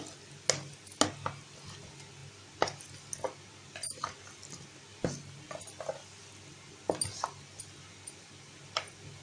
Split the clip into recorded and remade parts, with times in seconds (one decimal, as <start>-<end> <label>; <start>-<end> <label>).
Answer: 0.0-9.2 recorded